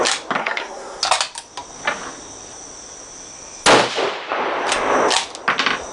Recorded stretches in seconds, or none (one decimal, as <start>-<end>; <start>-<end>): 0.0-0.4; 1.0-5.9